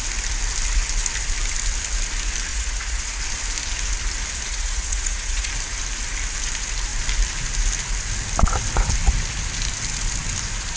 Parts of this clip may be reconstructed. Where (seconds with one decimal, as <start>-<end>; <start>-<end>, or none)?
2.5-3.2; 4.5-5.5